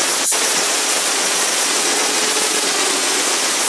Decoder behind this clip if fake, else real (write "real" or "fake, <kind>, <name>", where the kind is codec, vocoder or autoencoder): fake, vocoder, Vocos